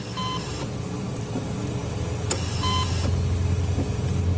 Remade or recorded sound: recorded